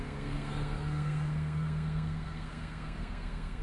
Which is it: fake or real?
fake